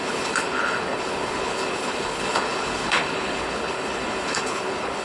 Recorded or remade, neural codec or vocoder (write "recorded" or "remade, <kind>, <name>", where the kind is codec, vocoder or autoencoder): remade, codec, HILCodec